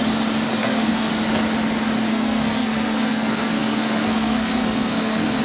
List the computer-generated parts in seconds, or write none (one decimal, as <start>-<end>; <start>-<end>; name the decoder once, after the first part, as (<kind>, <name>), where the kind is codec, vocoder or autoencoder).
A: 0.5-1.1 (codec, SNAC); 2.1-5.4